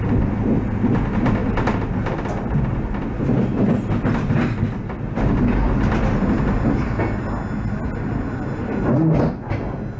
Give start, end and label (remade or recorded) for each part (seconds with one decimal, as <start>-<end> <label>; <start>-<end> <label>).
0.0-10.0 recorded